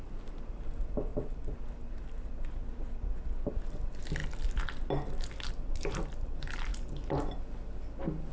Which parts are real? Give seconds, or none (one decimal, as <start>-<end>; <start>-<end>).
1.1-3.5; 4.2-5.5; 6.7-8.3